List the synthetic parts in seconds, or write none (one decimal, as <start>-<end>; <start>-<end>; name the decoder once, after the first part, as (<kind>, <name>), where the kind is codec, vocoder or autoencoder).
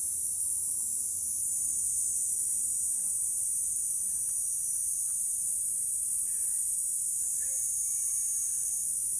none